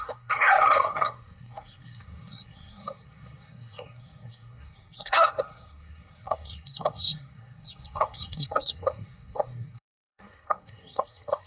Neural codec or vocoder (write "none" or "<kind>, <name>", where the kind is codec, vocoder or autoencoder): codec, SNAC